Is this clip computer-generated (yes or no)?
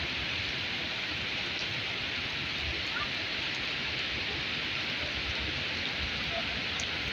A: no